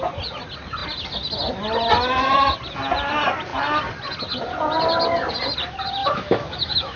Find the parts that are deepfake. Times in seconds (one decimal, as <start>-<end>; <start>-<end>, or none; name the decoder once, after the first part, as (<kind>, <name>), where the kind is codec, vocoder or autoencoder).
6.0-7.0 (autoencoder, DAC-VAE)